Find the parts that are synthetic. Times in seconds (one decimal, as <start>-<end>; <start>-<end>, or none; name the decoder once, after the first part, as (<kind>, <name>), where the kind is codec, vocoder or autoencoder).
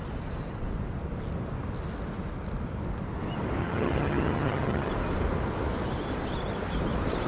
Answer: 3.6-4.9 (vocoder, HiFi-GAN)